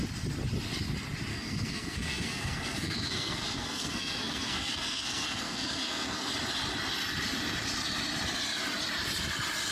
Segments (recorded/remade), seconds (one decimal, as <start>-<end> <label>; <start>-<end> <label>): 0.0-1.3 recorded; 1.3-6.3 remade; 6.3-9.7 recorded